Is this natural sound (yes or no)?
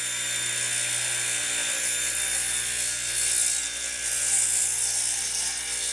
yes